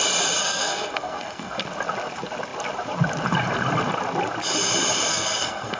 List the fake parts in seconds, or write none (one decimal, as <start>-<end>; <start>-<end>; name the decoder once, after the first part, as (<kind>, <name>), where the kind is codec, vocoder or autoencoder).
0.4-1.6 (codec, SNAC); 5.1-5.8